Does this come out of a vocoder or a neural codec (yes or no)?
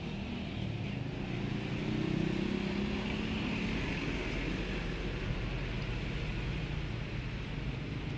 no